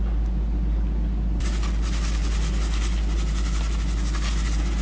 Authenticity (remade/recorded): recorded